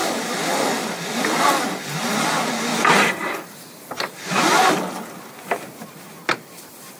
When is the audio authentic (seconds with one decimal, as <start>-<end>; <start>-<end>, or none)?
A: 0.0-2.7; 4.7-7.0